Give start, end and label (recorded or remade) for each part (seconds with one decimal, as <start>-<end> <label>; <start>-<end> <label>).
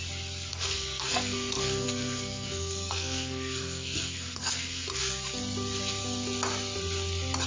0.0-0.5 recorded; 0.5-5.0 remade; 5.0-7.5 recorded